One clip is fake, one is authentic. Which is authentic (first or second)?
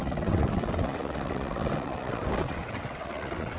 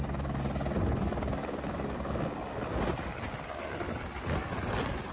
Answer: second